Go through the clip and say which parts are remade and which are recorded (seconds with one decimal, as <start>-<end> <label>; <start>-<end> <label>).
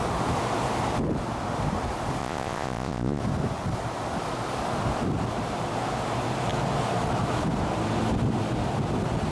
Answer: 0.0-2.2 recorded; 2.2-3.2 remade; 3.2-9.3 recorded